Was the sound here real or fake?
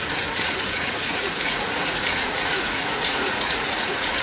fake